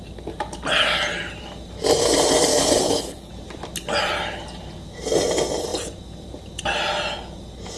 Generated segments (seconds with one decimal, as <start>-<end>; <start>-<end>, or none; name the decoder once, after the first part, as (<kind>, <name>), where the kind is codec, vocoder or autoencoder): 2.5-3.3 (codec, HILCodec)